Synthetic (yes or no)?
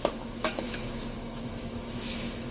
yes